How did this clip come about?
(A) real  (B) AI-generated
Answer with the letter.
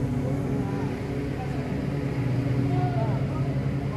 A